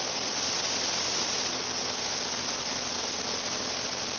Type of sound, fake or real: real